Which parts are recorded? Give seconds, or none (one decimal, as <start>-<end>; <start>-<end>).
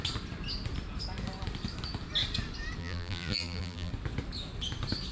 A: 0.0-2.8; 3.9-5.1